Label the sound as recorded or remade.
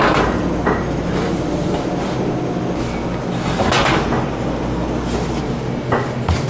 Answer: recorded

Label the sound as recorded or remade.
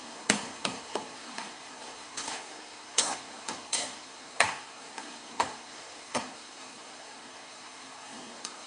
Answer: remade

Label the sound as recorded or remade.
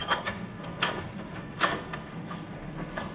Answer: remade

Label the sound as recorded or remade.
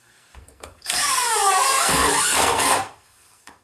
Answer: remade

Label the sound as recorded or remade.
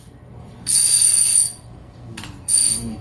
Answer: remade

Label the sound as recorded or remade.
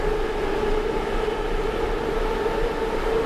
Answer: recorded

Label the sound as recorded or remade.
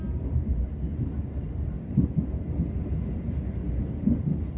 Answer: recorded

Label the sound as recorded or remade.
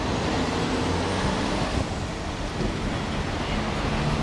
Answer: recorded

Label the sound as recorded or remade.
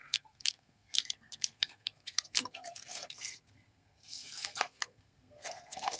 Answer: remade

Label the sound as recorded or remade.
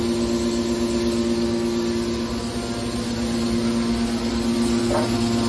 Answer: recorded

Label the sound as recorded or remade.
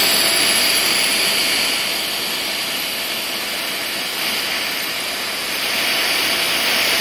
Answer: recorded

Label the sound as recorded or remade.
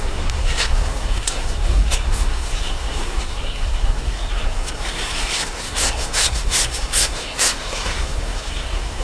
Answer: remade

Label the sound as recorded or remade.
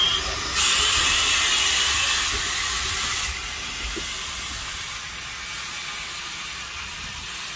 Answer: recorded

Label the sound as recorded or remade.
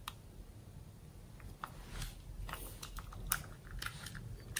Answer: recorded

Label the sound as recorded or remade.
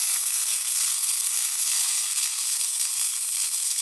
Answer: remade